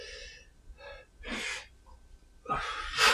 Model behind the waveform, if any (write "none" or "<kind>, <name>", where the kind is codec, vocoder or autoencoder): none